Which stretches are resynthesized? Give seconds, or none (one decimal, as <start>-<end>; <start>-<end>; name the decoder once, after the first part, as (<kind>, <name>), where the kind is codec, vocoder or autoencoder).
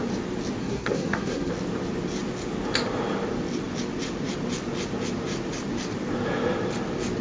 0.6-1.5 (codec, SNAC)